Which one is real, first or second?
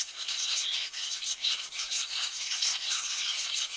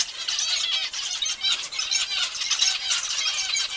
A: second